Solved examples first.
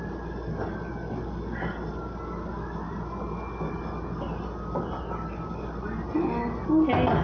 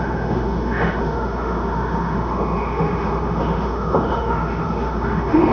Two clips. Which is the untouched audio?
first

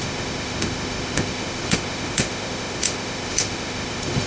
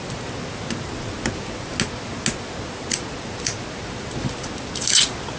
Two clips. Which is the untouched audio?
second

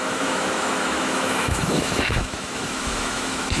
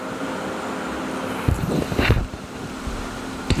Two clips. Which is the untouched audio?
second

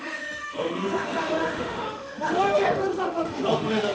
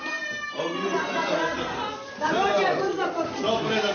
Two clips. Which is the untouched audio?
second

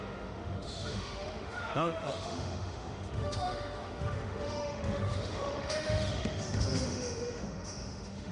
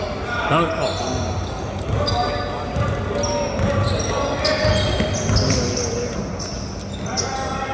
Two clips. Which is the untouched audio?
second